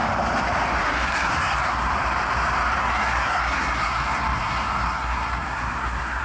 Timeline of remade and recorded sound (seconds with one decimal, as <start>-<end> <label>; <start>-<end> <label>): 0.0-0.8 recorded; 0.8-1.9 remade; 1.9-2.8 recorded; 2.8-6.2 remade